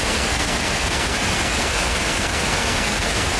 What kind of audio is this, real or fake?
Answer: fake